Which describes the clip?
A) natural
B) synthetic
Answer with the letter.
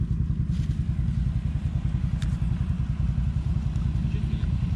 A